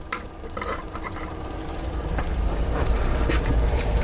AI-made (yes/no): yes